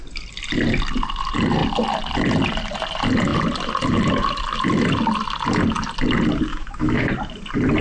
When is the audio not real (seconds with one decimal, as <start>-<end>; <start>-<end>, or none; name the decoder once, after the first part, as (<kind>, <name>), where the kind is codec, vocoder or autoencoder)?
6.5-7.1 (autoencoder, DAC-VAE)